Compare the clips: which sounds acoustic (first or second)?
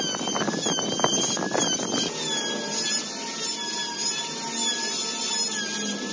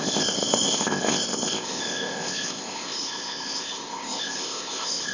first